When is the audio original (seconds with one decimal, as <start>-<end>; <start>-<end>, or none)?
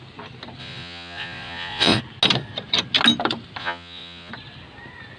0.0-0.6; 2.0-3.6; 4.3-5.2